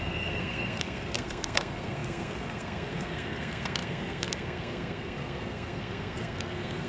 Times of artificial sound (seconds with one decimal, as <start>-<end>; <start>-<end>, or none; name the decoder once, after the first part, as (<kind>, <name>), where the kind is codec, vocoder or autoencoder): 0.0-6.9 (codec, SNAC)